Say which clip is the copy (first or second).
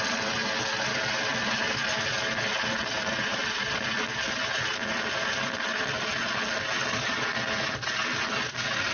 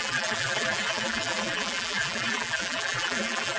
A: second